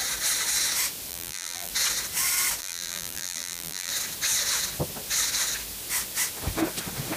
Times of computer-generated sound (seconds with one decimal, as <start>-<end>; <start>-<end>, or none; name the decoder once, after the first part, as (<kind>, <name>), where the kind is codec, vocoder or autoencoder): 1.1-1.7 (vocoder, BigVGAN v2); 2.6-3.9